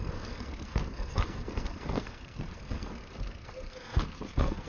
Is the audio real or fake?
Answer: fake